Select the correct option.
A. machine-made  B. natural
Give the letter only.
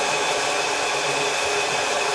B